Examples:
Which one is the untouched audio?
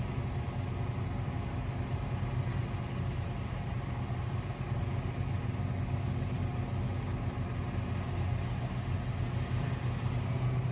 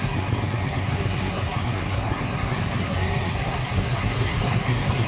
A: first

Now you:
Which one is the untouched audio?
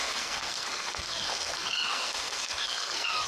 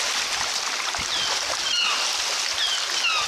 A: second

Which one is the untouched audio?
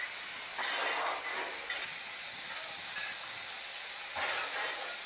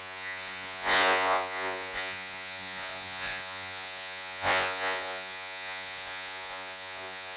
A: first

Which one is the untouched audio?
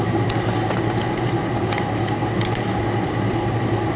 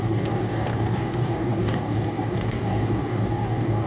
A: first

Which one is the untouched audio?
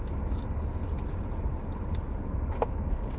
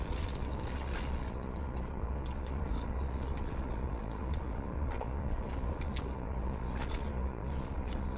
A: first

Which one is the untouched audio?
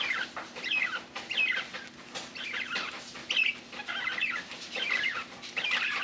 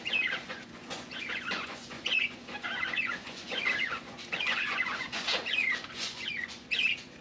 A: first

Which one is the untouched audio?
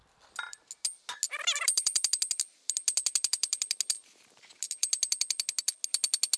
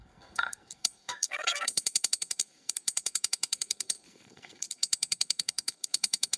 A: first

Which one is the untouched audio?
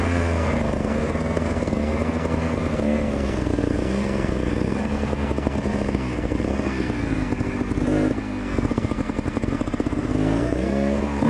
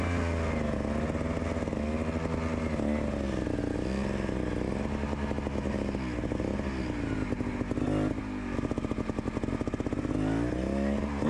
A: second